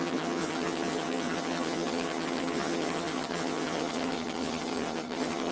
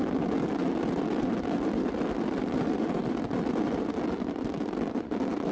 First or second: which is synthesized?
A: first